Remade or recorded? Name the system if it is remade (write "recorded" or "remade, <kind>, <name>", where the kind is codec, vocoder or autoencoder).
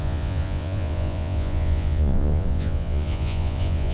remade, vocoder, Vocos